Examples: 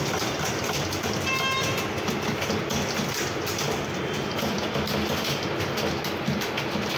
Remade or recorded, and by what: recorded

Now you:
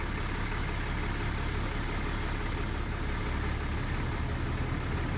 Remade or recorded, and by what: recorded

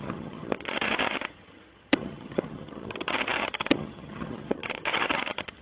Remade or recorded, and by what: remade, vocoder, HiFi-GAN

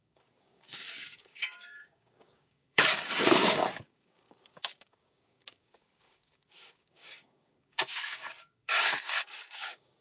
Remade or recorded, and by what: remade, codec, DAC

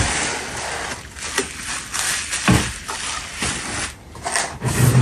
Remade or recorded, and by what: recorded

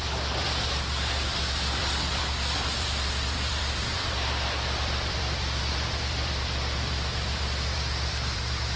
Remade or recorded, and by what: remade, vocoder, BigVGAN v2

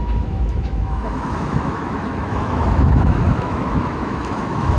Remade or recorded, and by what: remade, autoencoder, DAC-VAE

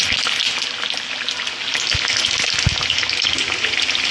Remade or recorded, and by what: recorded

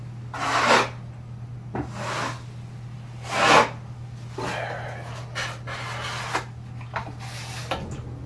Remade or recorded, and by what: recorded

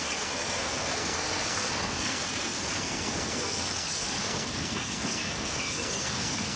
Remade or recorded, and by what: remade, codec, SNAC